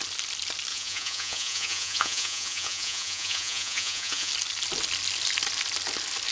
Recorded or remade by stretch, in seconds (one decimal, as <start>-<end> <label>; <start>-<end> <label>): 0.0-0.7 recorded; 0.7-4.3 remade; 4.3-6.3 recorded